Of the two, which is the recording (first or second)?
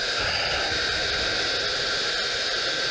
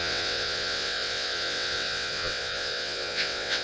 first